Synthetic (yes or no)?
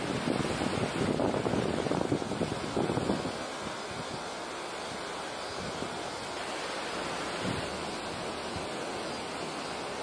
no